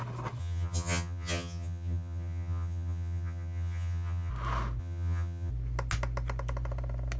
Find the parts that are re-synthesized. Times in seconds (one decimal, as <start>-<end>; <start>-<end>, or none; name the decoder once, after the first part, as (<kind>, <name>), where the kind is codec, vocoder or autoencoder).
0.4-4.3 (vocoder, HiFi-GAN); 4.8-5.5